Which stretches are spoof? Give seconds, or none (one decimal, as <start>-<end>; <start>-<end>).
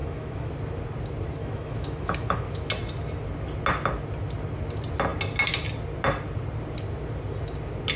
0.0-0.5; 1.4-2.7